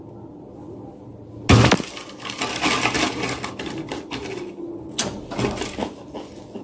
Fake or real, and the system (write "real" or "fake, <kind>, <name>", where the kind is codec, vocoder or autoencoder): real